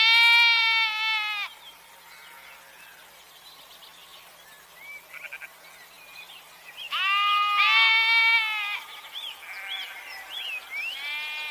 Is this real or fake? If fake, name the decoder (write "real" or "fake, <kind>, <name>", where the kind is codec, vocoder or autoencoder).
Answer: real